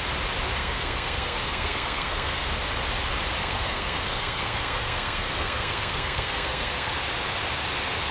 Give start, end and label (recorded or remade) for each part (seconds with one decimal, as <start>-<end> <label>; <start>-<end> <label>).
0.0-0.6 recorded; 0.6-2.5 remade; 2.5-3.4 recorded; 3.4-6.9 remade; 6.9-8.1 recorded